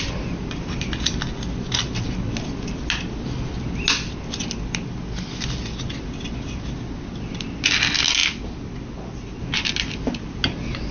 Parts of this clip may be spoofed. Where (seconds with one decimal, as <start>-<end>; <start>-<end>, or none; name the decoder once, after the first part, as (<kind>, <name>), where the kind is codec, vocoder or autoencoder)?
none